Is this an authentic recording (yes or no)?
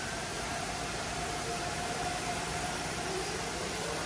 yes